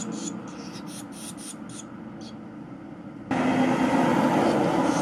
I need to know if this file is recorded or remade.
recorded